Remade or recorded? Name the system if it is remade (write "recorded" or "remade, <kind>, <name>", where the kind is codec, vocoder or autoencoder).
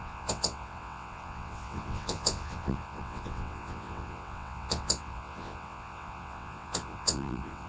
remade, vocoder, WaveNeXt